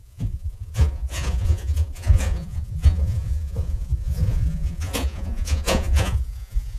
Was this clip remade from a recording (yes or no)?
yes